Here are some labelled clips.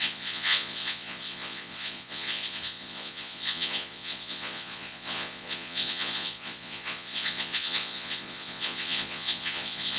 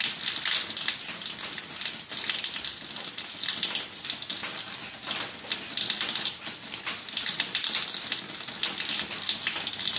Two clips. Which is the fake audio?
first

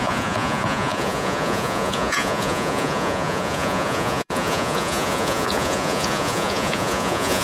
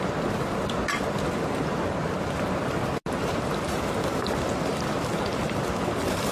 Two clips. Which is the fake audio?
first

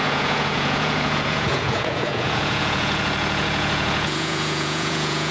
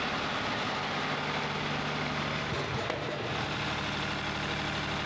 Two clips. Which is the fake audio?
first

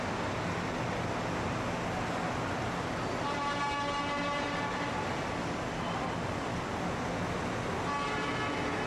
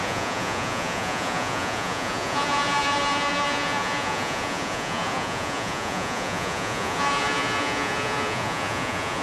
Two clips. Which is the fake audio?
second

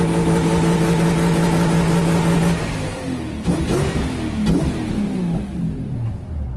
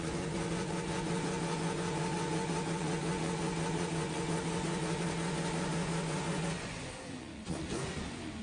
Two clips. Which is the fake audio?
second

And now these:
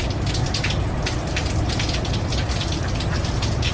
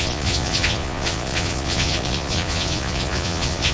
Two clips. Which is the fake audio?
second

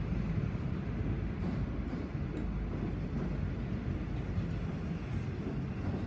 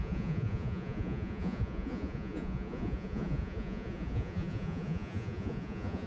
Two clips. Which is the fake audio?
second